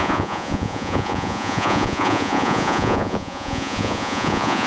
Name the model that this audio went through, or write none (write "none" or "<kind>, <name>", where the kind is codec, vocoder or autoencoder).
vocoder, Vocos